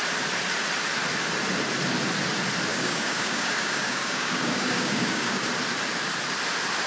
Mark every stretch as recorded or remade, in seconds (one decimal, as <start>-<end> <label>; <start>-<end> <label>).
0.0-2.7 recorded; 2.7-5.5 remade; 5.5-6.9 recorded